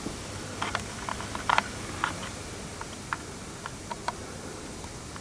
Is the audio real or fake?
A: real